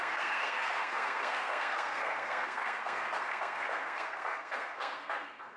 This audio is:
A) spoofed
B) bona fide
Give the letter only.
A